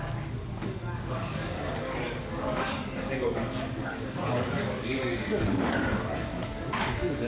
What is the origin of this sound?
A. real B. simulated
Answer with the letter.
B